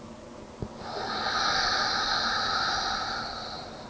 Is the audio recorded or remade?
recorded